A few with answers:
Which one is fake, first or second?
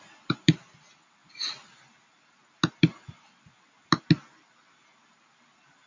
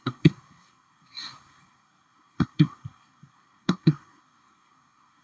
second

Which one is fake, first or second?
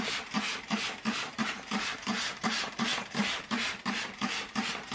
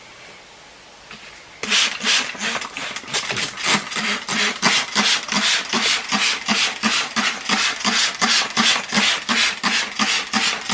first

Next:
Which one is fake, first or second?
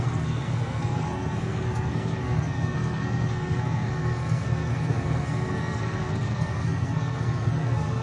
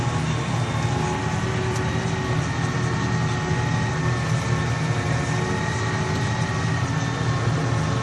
first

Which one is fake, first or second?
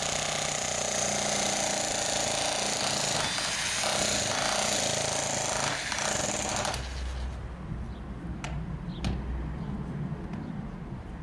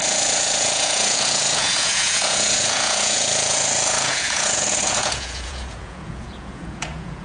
second